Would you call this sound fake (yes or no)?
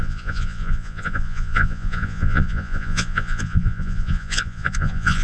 yes